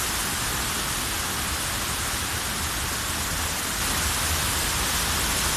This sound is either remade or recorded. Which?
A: recorded